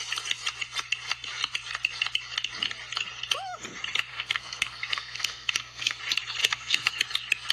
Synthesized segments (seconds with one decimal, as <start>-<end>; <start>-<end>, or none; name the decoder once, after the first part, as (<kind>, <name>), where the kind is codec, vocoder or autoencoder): 4.1-6.0 (codec, SNAC); 6.4-7.0

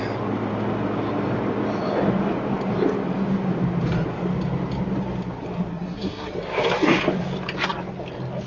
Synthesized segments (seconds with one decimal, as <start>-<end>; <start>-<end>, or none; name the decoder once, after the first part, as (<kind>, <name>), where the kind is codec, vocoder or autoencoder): 5.7-6.3 (codec, SNAC)